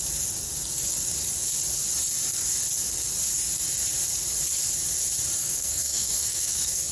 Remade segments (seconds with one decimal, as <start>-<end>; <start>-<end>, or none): 5.4-6.9